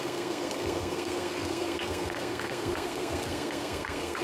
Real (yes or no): no